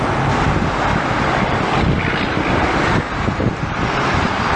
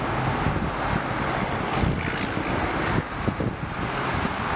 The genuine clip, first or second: second